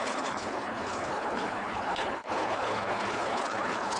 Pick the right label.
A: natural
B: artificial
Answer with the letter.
B